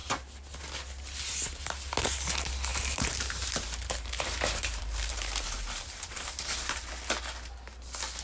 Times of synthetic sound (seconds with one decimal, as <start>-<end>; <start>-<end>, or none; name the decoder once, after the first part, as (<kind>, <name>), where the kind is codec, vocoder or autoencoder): 0.0-0.6 (vocoder, BigVGAN v2); 2.7-6.9